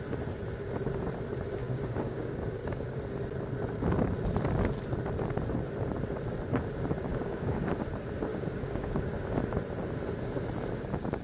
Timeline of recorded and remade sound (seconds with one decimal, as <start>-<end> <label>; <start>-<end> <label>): 0.0-1.6 recorded; 1.6-3.0 remade; 3.0-7.1 recorded; 7.1-7.7 remade; 7.7-8.3 recorded; 8.3-9.4 remade; 9.4-11.2 recorded